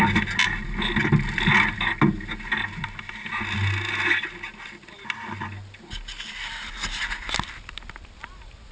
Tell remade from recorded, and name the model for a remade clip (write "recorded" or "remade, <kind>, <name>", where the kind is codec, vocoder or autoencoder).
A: recorded